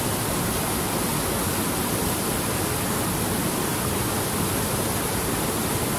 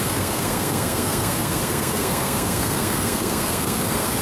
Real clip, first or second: first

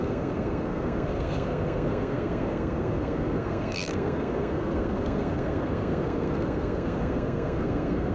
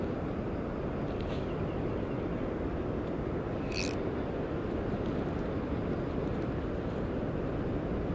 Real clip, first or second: second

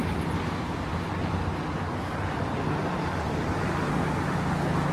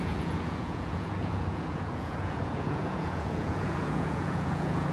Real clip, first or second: first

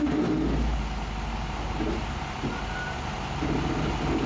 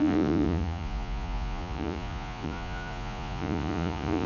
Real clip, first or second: first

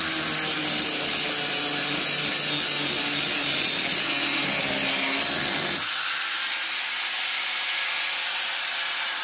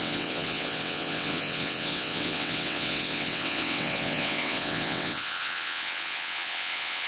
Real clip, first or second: first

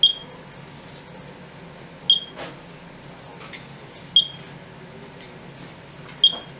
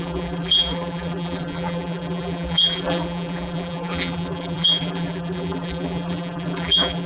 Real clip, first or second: first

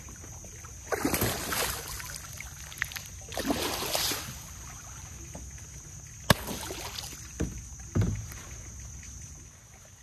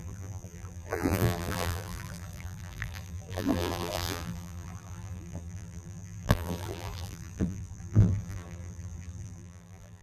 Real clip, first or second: first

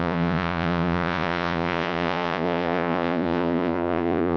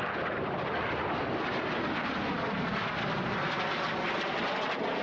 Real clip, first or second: second